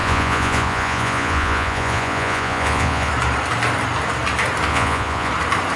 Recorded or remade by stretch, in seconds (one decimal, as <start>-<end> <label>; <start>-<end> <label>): 0.0-3.1 remade; 3.1-4.7 recorded; 4.7-5.3 remade; 5.3-5.8 recorded